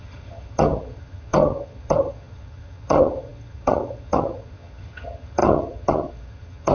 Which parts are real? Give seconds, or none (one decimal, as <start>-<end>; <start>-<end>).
none